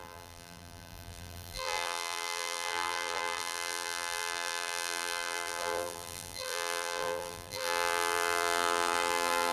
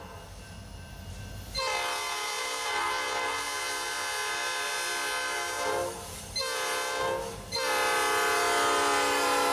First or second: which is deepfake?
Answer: first